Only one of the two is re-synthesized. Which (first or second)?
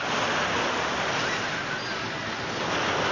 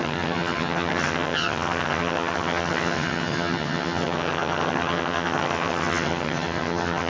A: second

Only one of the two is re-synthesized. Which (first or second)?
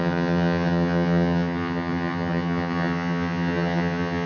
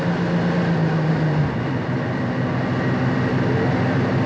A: first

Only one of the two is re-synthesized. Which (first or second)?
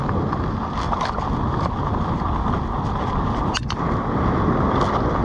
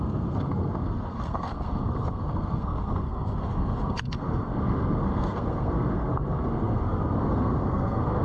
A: second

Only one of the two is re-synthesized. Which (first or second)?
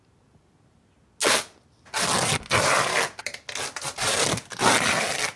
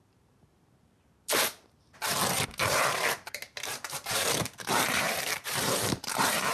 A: second